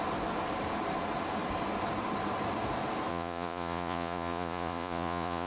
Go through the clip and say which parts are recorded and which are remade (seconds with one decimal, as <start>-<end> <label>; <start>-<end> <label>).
0.0-3.1 recorded; 3.1-5.5 remade